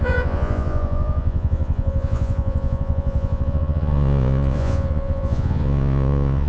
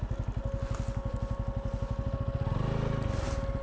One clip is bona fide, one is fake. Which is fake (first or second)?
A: first